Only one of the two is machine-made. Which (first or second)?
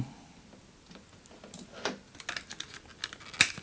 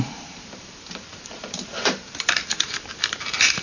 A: second